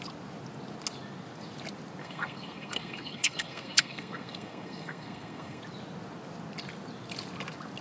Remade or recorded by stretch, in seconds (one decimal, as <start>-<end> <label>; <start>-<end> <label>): 0.0-2.0 recorded; 2.0-5.6 remade; 5.6-7.8 recorded